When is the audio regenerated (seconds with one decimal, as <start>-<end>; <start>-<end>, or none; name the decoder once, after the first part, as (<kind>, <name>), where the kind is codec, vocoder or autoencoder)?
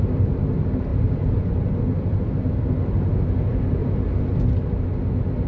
0.9-2.3 (vocoder, BigVGAN v2); 3.8-4.4